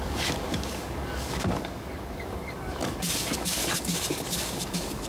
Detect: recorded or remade remade